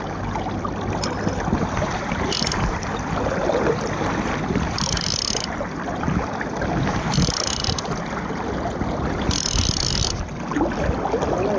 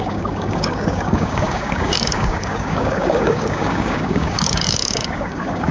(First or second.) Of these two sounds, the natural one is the first